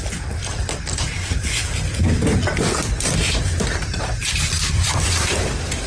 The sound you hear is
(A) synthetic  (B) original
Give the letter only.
A